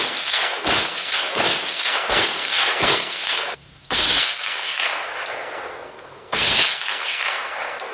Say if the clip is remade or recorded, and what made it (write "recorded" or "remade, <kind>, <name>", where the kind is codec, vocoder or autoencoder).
remade, codec, SNAC